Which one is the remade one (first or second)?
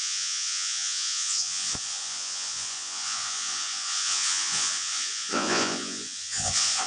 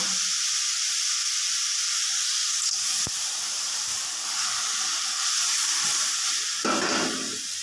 first